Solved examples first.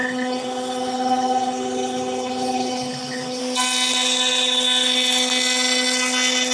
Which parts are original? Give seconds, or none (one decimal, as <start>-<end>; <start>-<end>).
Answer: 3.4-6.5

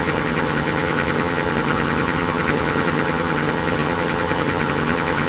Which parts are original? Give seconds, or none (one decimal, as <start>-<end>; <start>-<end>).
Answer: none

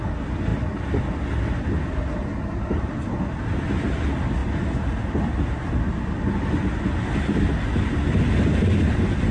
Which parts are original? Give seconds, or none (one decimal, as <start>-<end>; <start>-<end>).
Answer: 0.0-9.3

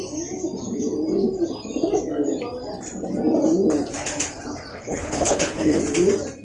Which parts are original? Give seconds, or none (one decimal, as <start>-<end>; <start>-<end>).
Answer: 0.0-4.7; 5.8-6.4

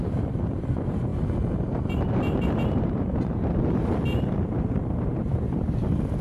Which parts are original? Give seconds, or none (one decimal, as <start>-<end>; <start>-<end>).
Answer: 1.1-1.6